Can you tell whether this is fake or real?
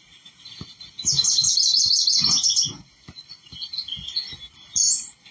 real